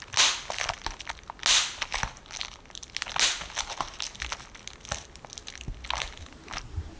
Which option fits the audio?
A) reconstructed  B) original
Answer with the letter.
B